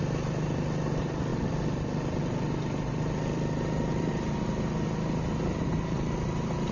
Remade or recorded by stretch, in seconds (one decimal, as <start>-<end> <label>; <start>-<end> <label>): 0.0-1.3 recorded; 1.3-2.2 remade; 2.2-3.9 recorded; 3.9-4.4 remade; 4.4-6.7 recorded

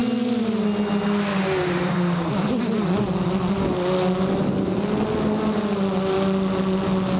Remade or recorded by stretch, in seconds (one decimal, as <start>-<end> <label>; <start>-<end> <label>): 0.0-1.3 recorded; 1.3-2.3 remade; 2.3-7.2 recorded

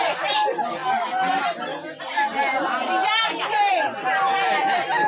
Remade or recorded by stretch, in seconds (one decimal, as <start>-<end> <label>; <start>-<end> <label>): 0.0-0.8 recorded; 0.8-1.4 remade; 1.4-5.1 recorded

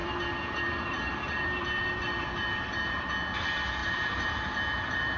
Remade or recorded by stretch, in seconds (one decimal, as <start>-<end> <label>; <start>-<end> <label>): 0.0-3.1 remade; 3.1-3.8 recorded; 3.8-5.2 remade